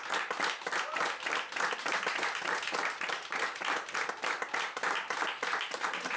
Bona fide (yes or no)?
yes